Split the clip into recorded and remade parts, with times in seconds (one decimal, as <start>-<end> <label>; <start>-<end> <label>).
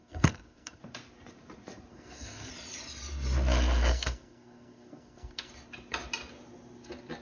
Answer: 0.0-0.8 remade; 0.8-1.9 recorded; 1.9-2.5 remade; 2.5-3.9 recorded; 3.9-5.5 remade; 5.5-7.2 recorded